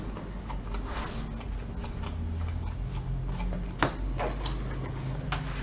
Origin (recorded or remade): recorded